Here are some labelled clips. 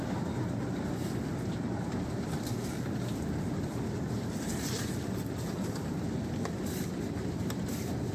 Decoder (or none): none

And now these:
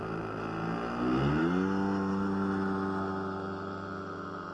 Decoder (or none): none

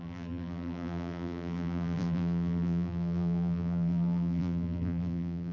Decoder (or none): vocoder, BigVGAN v2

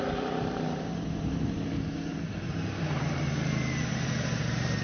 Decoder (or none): vocoder, BigVGAN v2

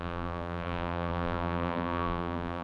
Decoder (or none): vocoder, BigVGAN v2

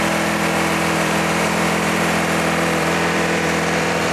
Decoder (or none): vocoder, BigVGAN v2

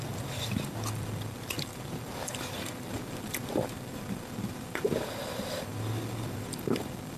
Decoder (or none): vocoder, BigVGAN v2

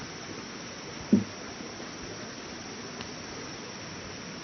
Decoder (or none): none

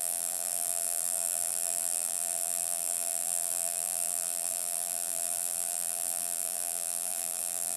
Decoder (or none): vocoder, BigVGAN v2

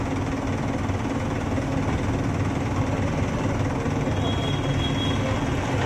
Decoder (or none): none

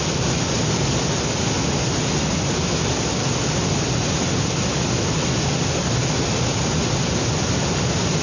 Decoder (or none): none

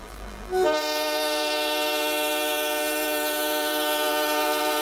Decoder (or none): vocoder, BigVGAN v2